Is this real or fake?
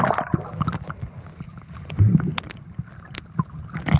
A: real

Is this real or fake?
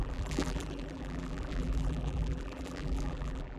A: fake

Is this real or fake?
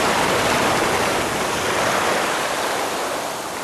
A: real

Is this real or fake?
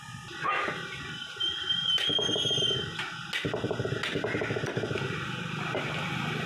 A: real